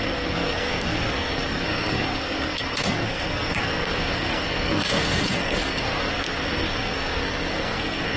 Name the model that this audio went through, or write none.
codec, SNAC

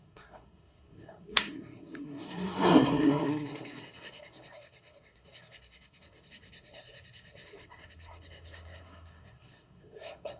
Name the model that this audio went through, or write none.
codec, SNAC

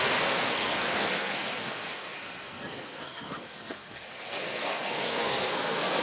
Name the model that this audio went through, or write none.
codec, SNAC